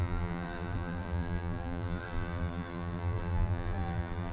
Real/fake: fake